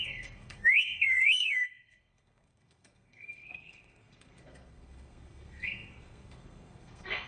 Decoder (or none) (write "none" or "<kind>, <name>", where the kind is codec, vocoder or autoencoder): codec, SNAC